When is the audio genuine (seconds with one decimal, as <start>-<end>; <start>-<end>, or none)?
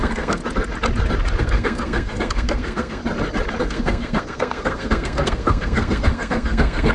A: 0.4-1.4; 3.0-3.6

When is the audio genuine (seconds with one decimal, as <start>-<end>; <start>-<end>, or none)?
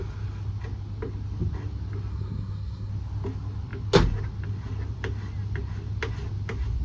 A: 0.0-2.1; 2.9-6.8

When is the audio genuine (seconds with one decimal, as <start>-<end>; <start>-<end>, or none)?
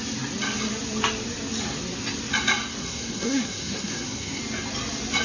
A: 0.0-2.8; 4.4-5.2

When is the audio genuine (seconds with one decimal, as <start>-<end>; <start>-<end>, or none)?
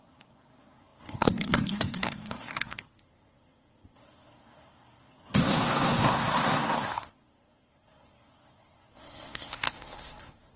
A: none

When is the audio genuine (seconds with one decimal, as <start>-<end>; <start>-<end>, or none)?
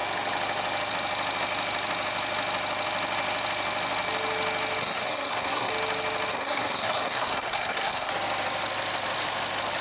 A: 0.0-4.8; 5.7-6.3; 8.1-9.8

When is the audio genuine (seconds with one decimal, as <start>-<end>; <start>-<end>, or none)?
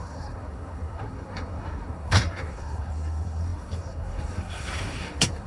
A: none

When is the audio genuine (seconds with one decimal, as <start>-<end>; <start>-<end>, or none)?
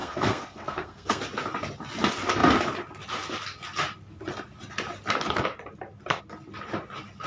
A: 1.2-7.3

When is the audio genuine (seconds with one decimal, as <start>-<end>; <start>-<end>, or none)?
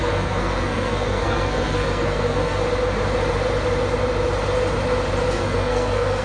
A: 2.6-5.3